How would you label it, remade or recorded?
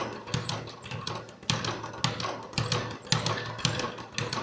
recorded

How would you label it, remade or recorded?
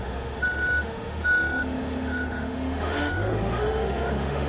remade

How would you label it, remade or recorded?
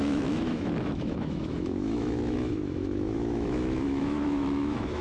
remade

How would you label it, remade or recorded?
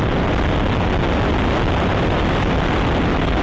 recorded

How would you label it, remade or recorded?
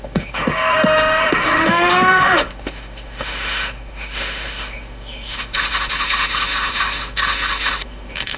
remade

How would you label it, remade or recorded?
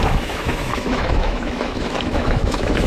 remade